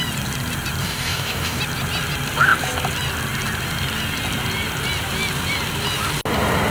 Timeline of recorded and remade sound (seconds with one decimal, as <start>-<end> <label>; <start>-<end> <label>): 0.0-0.8 recorded; 0.8-1.6 remade; 1.6-6.7 recorded